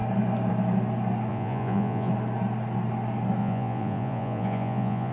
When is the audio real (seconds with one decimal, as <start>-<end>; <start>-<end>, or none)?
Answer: 0.0-1.3; 2.1-3.4